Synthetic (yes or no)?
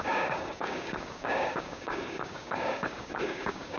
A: yes